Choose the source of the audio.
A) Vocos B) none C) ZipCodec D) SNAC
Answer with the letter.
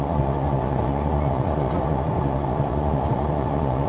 A